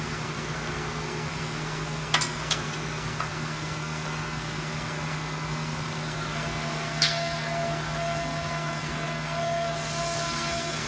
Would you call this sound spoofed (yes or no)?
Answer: yes